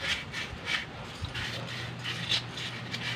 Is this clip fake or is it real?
real